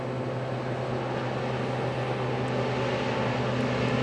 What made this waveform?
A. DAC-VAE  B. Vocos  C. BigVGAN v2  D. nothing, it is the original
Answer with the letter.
D